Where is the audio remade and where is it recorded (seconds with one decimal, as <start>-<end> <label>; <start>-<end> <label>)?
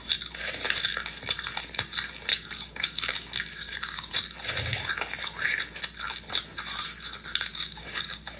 0.0-2.3 recorded; 2.3-4.1 remade; 4.1-7.5 recorded; 7.5-8.4 remade